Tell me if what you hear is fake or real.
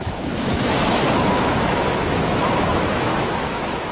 fake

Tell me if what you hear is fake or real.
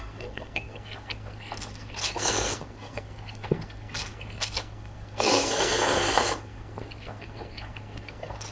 fake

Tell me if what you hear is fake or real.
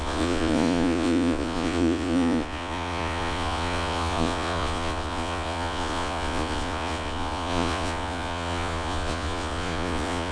fake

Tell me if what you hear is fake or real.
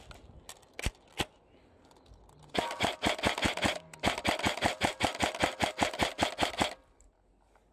real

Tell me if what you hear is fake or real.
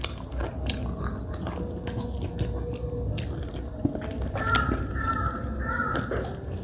real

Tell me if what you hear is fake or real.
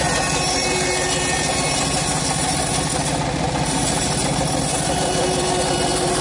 real